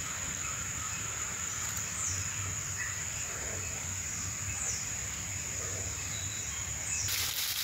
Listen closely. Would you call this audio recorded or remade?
recorded